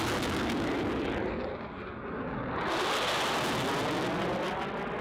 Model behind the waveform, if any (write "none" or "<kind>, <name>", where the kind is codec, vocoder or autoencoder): none